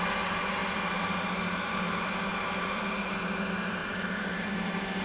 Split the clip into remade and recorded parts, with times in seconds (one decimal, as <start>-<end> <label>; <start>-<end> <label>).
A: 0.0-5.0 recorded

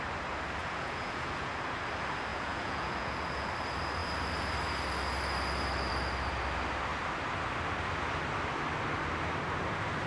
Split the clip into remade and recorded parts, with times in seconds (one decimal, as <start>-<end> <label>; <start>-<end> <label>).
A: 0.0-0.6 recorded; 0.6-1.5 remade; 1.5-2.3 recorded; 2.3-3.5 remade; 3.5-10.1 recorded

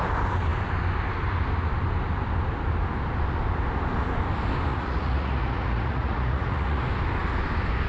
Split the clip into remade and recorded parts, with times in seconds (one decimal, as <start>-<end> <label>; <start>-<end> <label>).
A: 0.0-4.7 recorded; 4.7-6.8 remade; 6.8-7.9 recorded

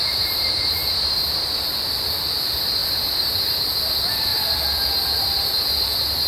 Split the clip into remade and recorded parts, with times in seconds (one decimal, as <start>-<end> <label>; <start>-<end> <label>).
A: 0.0-6.3 remade

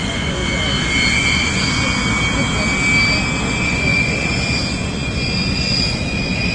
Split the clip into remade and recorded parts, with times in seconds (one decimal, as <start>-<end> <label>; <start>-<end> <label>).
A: 0.0-0.4 remade; 0.4-1.1 recorded; 1.1-2.0 remade; 2.0-3.5 recorded; 3.5-6.5 remade

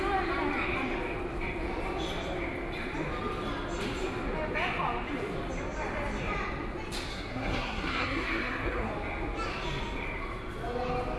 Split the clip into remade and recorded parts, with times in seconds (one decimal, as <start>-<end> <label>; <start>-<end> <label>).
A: 0.0-7.1 recorded; 7.1-8.9 remade; 8.9-11.2 recorded